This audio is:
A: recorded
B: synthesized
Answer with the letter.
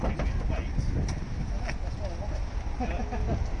A